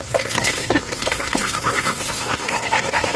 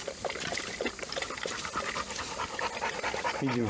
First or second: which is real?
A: second